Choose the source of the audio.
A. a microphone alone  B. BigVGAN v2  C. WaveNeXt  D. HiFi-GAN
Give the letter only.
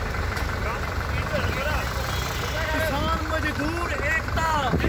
A